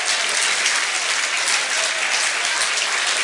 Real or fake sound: real